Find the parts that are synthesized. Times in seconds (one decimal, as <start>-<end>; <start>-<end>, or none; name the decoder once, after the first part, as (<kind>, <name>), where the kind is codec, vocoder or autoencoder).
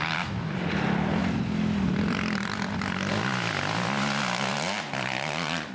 none